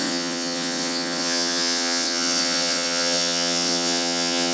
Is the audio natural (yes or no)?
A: no